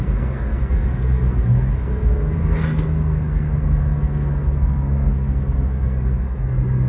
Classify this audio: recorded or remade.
remade